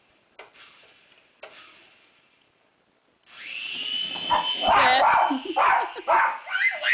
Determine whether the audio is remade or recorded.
recorded